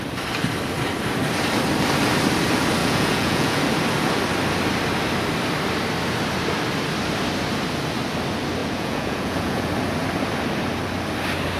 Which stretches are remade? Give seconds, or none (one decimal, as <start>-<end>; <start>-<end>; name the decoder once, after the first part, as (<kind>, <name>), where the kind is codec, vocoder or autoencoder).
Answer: 2.8-3.6 (vocoder, Vocos); 8.6-9.7